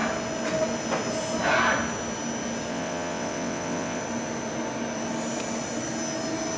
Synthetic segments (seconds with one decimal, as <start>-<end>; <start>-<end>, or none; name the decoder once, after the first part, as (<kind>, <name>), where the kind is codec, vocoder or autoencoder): 2.7-4.0 (vocoder, WaveNeXt)